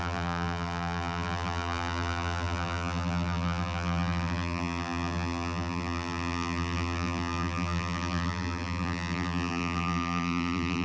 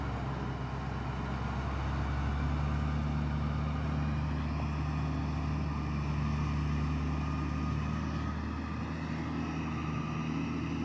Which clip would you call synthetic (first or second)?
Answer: first